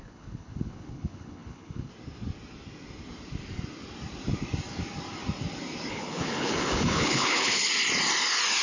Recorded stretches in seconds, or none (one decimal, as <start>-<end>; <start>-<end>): 1.9-5.9; 7.7-8.6

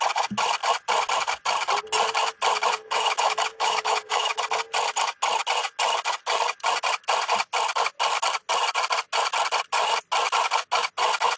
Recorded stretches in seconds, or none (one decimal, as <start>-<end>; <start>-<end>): 0.0-2.8; 4.4-11.4